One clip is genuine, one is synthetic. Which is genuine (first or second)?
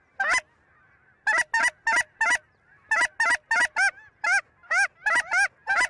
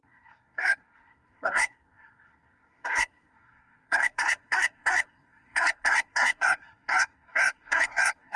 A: first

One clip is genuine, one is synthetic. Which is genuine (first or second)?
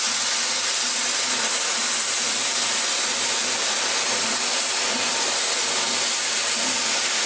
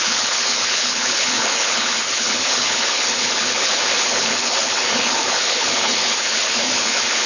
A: first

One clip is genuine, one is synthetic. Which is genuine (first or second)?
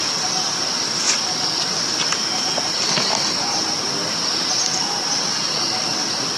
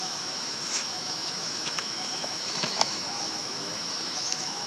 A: first